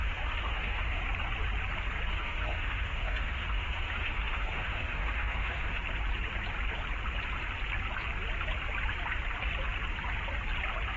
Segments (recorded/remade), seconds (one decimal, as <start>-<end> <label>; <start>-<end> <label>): 0.0-1.0 remade; 1.0-2.1 recorded; 2.1-5.8 remade; 5.8-11.0 recorded